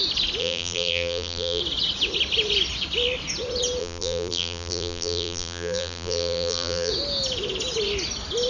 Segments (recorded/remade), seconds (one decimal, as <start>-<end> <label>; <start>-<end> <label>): 0.0-0.4 recorded; 0.4-1.6 remade; 1.6-3.8 recorded; 3.8-6.9 remade; 6.9-8.5 recorded